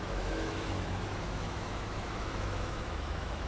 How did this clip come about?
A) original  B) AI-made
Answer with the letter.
B